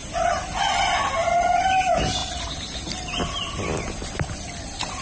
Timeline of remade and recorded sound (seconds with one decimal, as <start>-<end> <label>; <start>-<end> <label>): 0.0-5.0 recorded